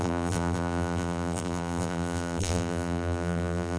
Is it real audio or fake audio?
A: fake